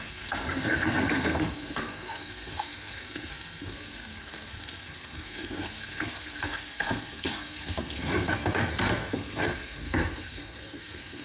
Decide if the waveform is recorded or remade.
remade